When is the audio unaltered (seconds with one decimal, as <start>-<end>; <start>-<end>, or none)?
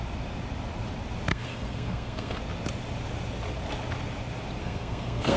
0.0-1.3; 2.4-4.6